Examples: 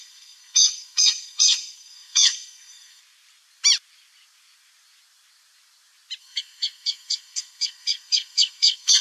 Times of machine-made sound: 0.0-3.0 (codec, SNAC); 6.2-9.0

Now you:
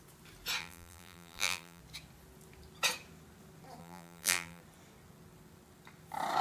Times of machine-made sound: 0.6-1.8 (vocoder, BigVGAN v2); 3.8-4.6

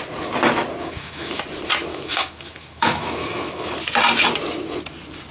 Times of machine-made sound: 0.8-1.4 (autoencoder, DAC-VAE); 1.9-3.7